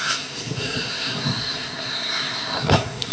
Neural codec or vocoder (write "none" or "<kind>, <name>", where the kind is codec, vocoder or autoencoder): codec, SNAC